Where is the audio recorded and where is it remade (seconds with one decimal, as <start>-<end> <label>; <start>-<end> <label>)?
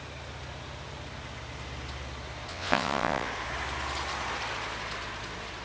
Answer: 0.0-2.5 recorded; 2.5-3.3 remade; 3.3-5.6 recorded